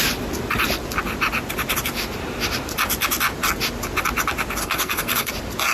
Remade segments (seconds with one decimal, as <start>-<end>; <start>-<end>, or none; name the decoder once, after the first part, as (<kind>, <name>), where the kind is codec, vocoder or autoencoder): 4.6-5.3 (codec, SNAC)